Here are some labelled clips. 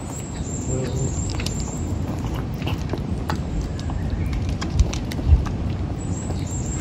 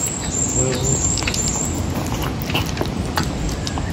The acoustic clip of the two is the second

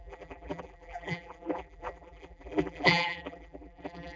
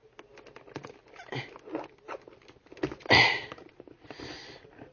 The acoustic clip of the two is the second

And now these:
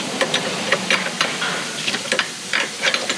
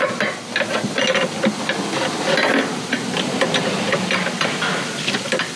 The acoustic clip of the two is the second